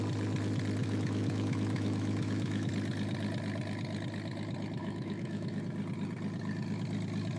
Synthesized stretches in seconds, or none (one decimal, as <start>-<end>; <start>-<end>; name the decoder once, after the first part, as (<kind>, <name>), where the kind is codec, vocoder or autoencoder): 0.8-2.7 (autoencoder, DAC-VAE); 4.8-5.6